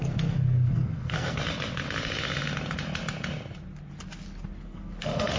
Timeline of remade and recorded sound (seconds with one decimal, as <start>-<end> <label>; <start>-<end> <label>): 0.0-1.4 remade; 1.4-4.6 recorded; 4.6-5.4 remade